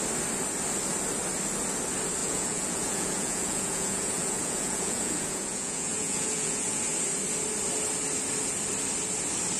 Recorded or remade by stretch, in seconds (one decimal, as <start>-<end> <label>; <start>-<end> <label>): 0.0-2.2 recorded; 2.2-6.8 remade; 6.8-9.6 recorded